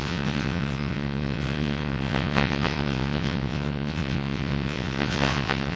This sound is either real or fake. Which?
fake